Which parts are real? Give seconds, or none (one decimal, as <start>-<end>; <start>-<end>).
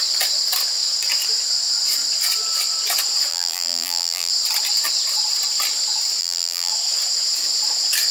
0.0-3.3; 4.3-6.2; 6.7-8.1